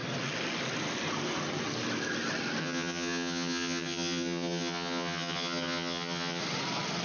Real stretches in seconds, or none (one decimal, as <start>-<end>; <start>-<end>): 0.0-2.6; 6.4-7.0